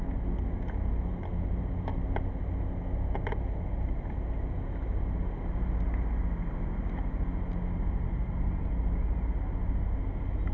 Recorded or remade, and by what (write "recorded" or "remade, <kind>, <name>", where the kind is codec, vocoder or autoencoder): recorded